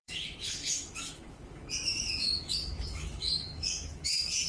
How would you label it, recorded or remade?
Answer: remade